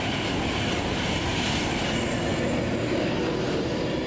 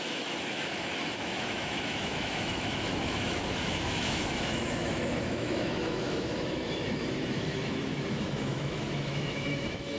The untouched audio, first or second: first